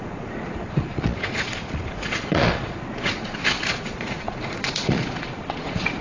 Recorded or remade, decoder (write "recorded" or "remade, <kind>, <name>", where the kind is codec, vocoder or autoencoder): remade, vocoder, Vocos